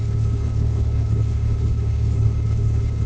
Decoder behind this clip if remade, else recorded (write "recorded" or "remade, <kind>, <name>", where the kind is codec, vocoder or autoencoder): remade, codec, HILCodec